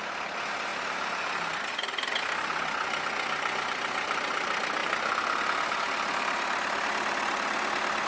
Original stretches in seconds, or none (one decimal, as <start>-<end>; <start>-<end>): 0.0-8.1